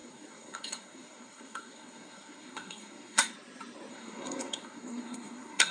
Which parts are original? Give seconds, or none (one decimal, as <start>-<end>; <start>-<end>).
3.2-3.9